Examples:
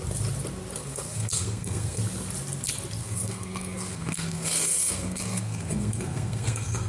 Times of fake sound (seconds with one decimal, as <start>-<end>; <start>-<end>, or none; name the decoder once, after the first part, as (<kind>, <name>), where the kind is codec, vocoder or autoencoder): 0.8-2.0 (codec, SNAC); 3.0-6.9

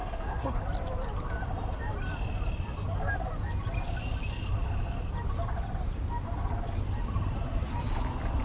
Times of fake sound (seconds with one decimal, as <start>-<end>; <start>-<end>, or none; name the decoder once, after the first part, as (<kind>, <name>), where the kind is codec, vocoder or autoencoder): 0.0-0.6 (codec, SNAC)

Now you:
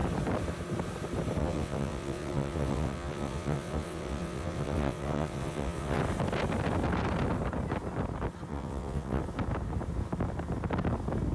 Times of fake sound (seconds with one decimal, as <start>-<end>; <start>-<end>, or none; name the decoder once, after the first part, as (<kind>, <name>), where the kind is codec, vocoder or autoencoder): 1.4-6.0 (vocoder, WaveNeXt); 8.5-9.2

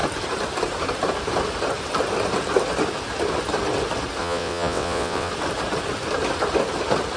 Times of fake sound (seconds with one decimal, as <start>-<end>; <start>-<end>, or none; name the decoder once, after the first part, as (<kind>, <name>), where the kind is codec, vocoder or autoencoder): 4.2-5.3 (vocoder, WaveNeXt)

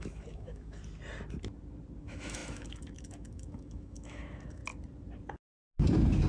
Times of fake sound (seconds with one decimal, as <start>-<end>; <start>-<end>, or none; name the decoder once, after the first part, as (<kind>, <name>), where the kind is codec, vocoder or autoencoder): 0.0-0.8 (autoencoder, DAC-VAE); 2.0-4.6

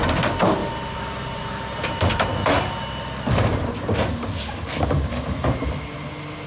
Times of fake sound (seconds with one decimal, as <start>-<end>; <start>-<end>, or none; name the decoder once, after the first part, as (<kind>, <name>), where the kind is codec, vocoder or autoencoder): 0.6-4.1 (vocoder, BigVGAN v2)

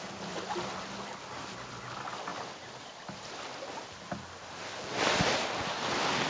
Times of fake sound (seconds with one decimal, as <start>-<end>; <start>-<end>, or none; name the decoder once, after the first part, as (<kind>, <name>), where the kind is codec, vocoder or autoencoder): 2.3-3.4 (vocoder, BigVGAN v2)